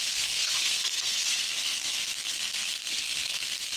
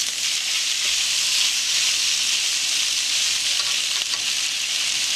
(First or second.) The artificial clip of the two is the first